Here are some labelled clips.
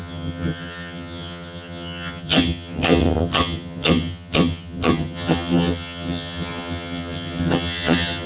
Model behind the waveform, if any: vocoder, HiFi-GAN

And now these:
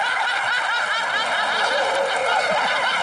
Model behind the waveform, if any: none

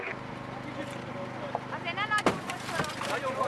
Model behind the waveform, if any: none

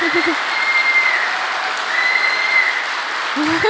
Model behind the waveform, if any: none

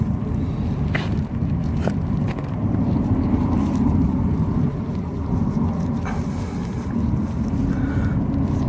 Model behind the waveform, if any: none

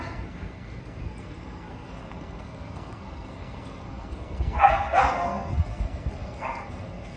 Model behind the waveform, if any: codec, SNAC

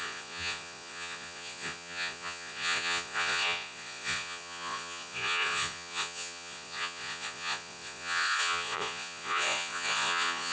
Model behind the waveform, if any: vocoder, Vocos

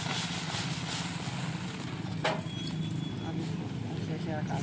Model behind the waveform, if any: none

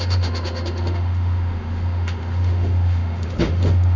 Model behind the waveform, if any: autoencoder, DAC-VAE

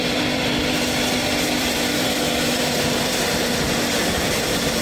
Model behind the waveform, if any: vocoder, BigVGAN v2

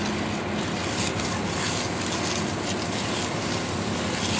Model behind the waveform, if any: none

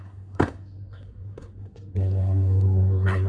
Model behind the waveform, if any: codec, SNAC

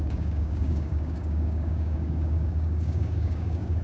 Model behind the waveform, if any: codec, DAC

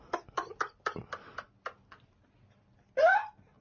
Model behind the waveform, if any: none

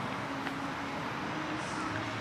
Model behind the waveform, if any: none